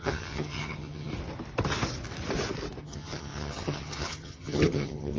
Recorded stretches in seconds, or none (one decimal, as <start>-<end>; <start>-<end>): 1.1-2.8